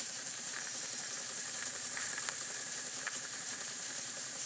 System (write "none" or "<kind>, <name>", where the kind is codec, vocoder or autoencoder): vocoder, BigVGAN v2